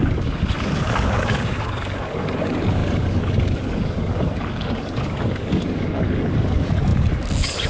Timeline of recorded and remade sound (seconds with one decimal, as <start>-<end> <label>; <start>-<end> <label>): 0.0-7.7 remade